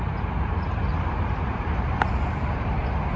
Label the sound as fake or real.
fake